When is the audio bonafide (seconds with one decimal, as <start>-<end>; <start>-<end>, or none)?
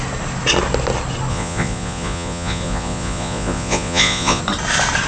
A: 0.0-1.3; 4.4-5.1